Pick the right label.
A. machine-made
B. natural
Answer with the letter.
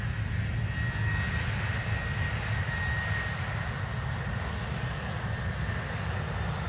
B